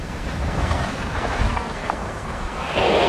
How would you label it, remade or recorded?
remade